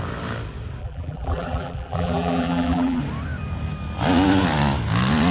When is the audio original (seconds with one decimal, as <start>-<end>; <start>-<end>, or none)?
0.0-0.8; 3.0-5.3